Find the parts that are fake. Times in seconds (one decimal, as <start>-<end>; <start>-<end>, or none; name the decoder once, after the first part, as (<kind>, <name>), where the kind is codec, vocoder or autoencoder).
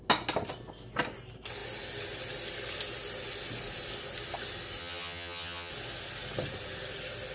4.8-5.7 (vocoder, HiFi-GAN)